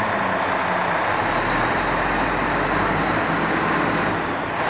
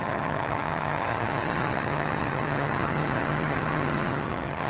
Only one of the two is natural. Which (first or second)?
first